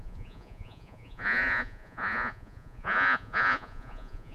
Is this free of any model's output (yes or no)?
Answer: no